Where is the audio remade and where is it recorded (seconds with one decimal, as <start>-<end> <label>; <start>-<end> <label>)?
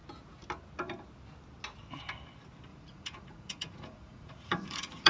0.0-2.7 recorded; 2.7-5.1 remade